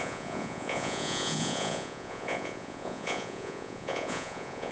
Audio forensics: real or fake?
fake